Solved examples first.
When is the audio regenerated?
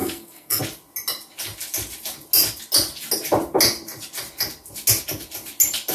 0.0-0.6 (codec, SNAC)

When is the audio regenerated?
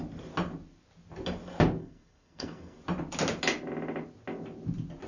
1.8-2.8 (codec, SNAC)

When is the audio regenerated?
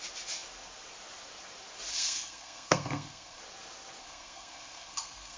1.9-3.4 (codec, SNAC); 4.0-5.4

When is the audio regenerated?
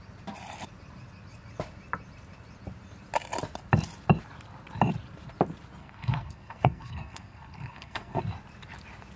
5.8-8.2 (codec, SNAC)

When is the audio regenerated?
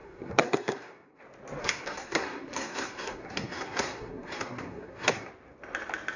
0.0-1.2 (codec, SNAC); 1.6-5.3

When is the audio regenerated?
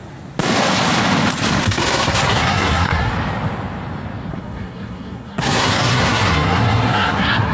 1.6-3.1 (codec, SNAC); 4.3-7.5